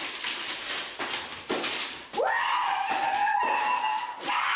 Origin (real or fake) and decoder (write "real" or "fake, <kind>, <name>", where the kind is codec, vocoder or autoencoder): real